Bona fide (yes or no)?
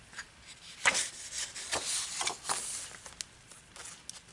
yes